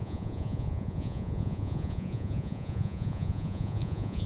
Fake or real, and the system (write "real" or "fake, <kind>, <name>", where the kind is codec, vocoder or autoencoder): fake, vocoder, Vocos